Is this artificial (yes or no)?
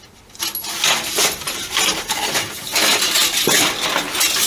no